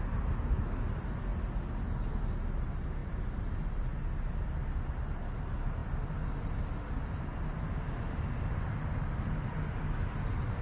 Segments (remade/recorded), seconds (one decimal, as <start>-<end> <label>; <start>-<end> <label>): 0.0-10.6 recorded